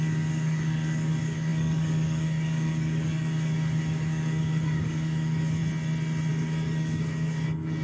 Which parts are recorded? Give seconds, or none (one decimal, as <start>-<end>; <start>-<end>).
5.6-6.3

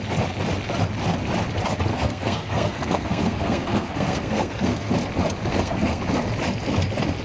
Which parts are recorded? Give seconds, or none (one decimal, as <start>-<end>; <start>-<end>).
0.0-1.9; 4.9-5.5; 6.0-7.2

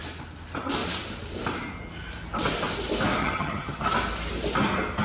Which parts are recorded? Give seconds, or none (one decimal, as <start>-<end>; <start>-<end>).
0.0-3.2; 3.8-5.0

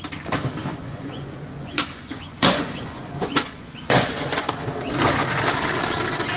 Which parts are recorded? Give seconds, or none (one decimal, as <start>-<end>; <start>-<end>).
0.0-0.7; 4.5-6.4

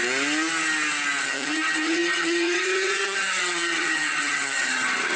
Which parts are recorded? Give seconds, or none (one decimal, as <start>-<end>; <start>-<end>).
0.0-1.2